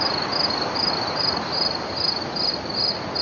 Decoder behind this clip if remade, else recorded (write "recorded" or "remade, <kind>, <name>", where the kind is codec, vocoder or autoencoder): recorded